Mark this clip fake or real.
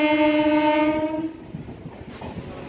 real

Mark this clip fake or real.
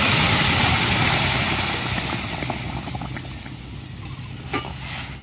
real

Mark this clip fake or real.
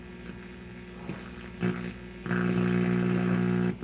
real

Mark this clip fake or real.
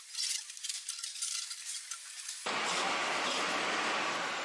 real